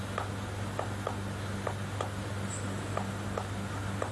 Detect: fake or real real